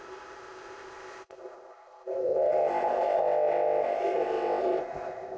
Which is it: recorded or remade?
remade